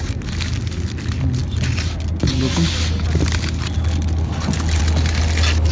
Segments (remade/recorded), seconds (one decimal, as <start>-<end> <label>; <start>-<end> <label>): 0.0-5.7 recorded